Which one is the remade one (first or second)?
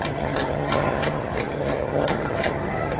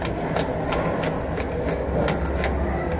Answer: first